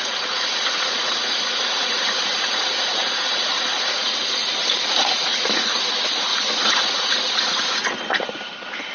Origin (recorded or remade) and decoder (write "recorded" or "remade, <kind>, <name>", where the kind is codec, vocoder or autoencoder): remade, vocoder, Vocos